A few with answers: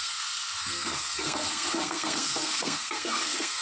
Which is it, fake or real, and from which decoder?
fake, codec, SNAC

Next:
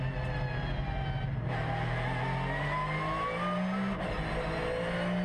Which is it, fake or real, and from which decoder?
real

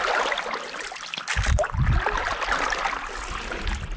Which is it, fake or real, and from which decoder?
real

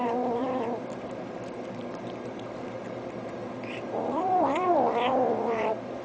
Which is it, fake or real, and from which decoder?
fake, vocoder, BigVGAN v2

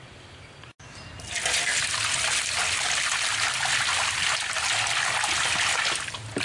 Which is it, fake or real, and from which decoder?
real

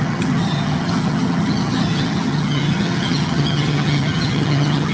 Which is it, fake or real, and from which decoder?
fake, vocoder, HiFi-GAN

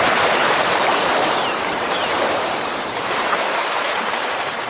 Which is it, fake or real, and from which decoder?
fake, vocoder, BigVGAN v2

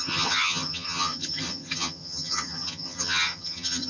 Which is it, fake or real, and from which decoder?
fake, vocoder, HiFi-GAN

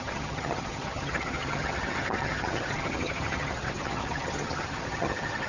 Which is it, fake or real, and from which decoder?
fake, vocoder, HiFi-GAN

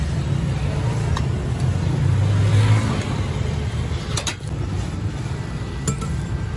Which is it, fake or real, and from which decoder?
real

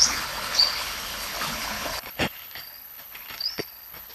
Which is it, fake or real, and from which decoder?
fake, codec, HILCodec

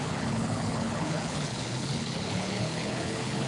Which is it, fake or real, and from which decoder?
fake, codec, HILCodec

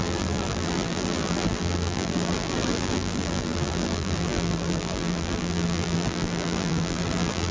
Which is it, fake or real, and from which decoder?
fake, vocoder, BigVGAN v2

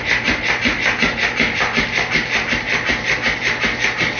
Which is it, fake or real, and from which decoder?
real